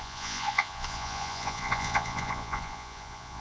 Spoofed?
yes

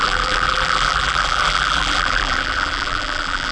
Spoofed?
yes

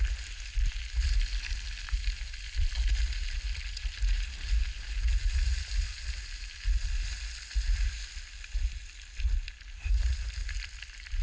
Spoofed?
no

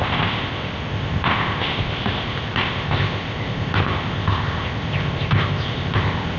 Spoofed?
yes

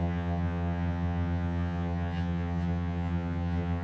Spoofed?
yes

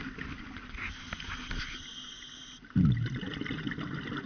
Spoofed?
no